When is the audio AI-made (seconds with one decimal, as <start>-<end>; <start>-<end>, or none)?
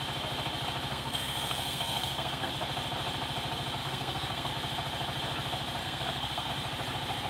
0.9-2.5; 3.8-4.5; 5.8-6.5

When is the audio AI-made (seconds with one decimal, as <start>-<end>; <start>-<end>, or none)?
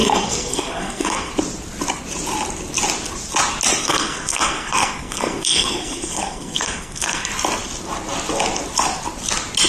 0.0-1.3; 3.8-7.3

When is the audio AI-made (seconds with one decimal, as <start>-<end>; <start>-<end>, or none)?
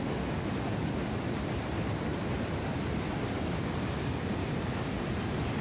none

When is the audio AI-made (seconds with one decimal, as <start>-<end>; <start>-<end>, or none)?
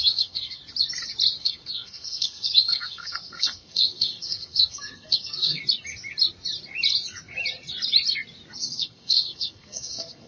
0.0-0.6; 1.4-5.6; 8.6-10.3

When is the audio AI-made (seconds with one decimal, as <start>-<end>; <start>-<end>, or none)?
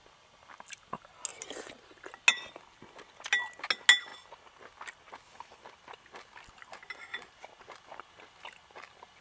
none